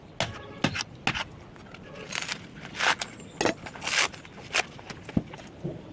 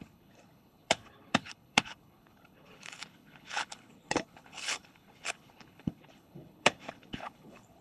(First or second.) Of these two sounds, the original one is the first